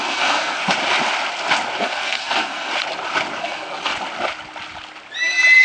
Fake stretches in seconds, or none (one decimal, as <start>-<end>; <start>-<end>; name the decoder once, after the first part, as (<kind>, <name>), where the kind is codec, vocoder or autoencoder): 0.0-0.6 (codec, SNAC); 1.8-2.7; 3.4-3.9